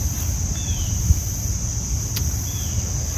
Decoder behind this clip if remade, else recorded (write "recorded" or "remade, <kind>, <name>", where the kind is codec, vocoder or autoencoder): recorded